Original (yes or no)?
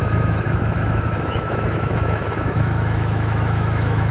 no